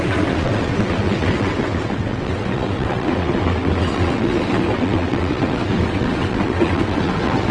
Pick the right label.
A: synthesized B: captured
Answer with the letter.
A